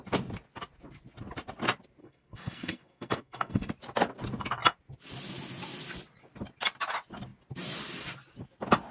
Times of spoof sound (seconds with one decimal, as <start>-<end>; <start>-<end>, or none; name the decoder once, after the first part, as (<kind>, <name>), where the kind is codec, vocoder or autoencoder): 2.0-3.7 (codec, SNAC)